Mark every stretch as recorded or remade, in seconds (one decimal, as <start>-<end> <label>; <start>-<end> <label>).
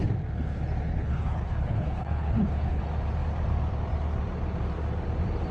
0.0-0.9 recorded; 0.9-2.8 remade; 2.8-5.5 recorded